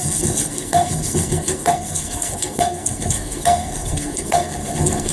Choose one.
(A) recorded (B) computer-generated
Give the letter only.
B